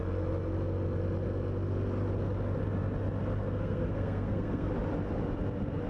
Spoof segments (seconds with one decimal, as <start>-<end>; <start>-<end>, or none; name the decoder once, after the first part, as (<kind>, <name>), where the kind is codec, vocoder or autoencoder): 3.4-4.7 (codec, SNAC)

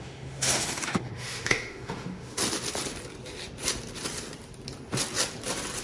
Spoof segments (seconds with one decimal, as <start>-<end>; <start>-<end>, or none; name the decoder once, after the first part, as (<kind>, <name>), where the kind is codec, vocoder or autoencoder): 0.0-2.4 (autoencoder, DAC-VAE)

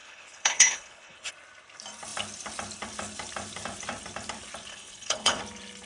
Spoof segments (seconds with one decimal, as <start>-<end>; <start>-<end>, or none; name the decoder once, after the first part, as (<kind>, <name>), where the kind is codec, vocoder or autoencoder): 0.0-1.3 (codec, HILCodec); 4.7-5.4

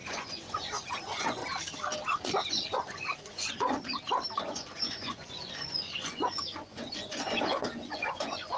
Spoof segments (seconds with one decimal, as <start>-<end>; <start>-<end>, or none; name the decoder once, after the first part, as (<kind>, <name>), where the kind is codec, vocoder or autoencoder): 0.0-1.4 (vocoder, Vocos); 2.5-3.9; 4.4-8.6

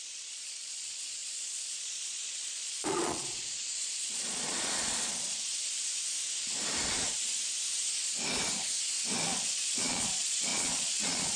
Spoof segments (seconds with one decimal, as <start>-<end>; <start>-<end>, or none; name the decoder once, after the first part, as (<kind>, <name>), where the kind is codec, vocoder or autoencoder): 0.0-5.5 (vocoder, Vocos); 9.2-11.4

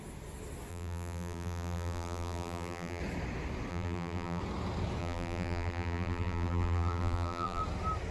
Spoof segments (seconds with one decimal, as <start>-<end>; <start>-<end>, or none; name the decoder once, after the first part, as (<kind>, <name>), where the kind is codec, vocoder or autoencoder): 0.7-3.0 (vocoder, BigVGAN v2); 3.7-4.4; 5.0-7.6

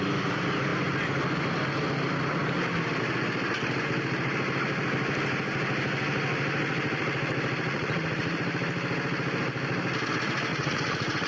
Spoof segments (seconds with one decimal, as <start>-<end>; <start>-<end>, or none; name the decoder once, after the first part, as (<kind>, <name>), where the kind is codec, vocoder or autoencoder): 7.7-8.4 (vocoder, Vocos); 10.5-11.3

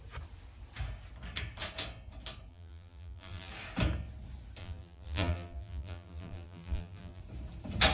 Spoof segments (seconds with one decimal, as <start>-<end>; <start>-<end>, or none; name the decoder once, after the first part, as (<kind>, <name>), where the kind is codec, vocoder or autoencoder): 2.5-3.5 (vocoder, BigVGAN v2); 4.6-7.2